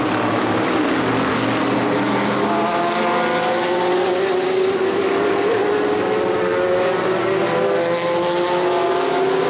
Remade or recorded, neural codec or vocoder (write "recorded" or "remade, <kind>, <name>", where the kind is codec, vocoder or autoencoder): recorded